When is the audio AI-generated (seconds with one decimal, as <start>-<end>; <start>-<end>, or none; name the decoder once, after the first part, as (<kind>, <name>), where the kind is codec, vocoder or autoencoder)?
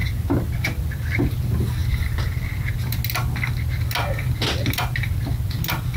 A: none